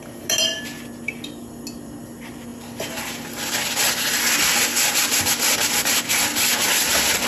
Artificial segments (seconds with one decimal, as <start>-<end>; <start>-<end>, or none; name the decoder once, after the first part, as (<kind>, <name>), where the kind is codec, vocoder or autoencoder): none